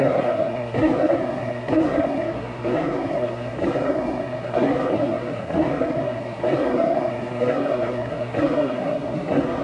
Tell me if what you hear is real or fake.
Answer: fake